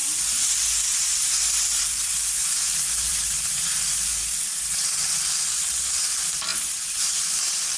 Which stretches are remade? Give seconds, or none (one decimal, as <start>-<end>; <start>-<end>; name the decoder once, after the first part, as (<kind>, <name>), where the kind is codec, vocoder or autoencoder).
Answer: 0.0-0.5 (vocoder, BigVGAN v2); 2.1-3.6